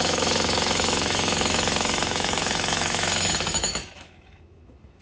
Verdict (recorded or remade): remade